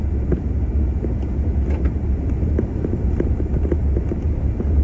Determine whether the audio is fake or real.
real